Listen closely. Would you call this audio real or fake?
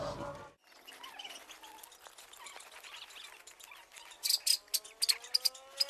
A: real